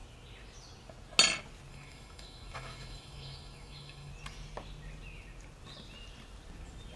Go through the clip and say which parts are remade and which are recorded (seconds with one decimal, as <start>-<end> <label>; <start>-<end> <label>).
0.0-1.7 recorded; 1.7-4.1 remade; 4.1-7.0 recorded